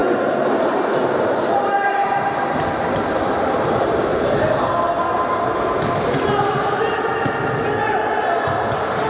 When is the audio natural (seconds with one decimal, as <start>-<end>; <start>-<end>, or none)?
0.0-9.1